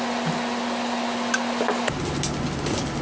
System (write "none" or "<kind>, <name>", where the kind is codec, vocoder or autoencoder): none